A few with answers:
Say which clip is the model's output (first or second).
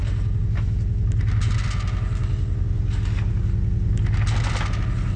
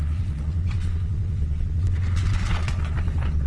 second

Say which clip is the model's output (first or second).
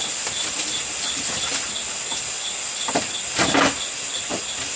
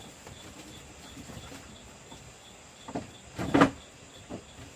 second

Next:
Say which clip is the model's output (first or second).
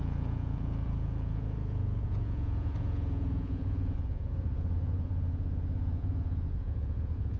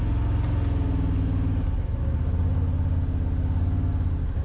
first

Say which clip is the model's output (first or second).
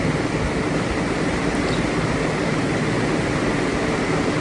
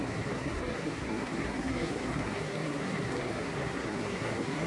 second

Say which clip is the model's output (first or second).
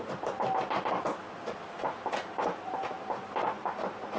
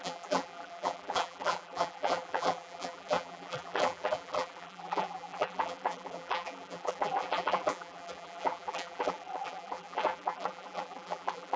second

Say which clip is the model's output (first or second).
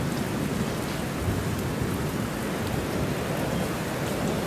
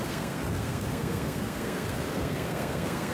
second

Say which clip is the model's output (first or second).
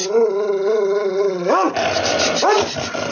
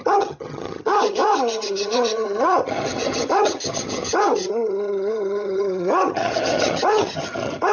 second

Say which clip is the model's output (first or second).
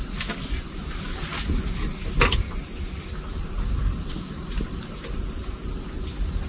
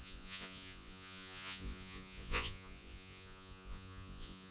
second